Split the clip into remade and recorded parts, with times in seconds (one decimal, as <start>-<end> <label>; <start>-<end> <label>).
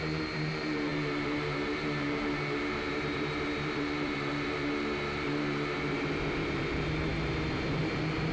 0.0-8.3 remade